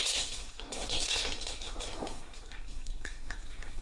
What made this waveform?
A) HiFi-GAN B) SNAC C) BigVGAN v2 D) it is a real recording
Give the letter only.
B